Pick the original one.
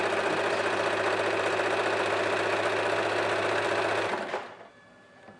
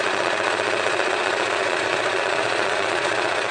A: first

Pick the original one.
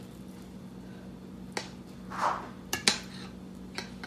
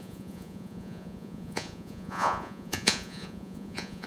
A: first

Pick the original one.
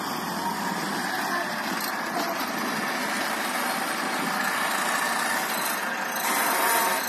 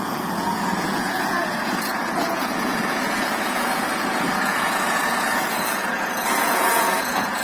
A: first